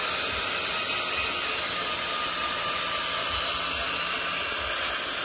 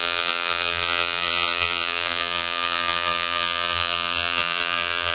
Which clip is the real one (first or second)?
first